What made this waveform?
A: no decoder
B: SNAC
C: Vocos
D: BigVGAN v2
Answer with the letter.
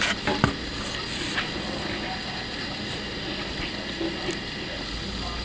A